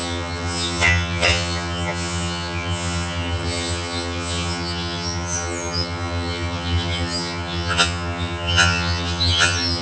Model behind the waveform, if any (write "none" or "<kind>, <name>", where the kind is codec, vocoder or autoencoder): vocoder, HiFi-GAN